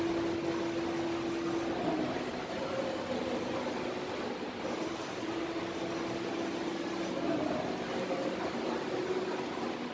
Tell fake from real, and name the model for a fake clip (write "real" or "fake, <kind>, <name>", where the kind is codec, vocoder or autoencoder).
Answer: real